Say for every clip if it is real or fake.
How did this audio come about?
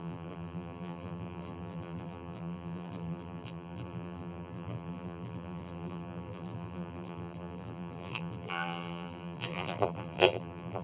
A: fake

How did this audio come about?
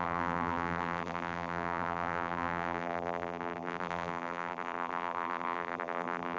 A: fake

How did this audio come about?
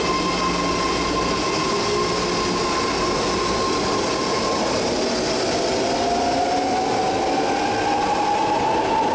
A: real